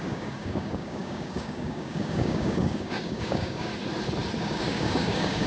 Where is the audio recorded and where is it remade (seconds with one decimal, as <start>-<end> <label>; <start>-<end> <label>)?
0.0-3.7 remade; 3.7-4.4 recorded; 4.4-5.5 remade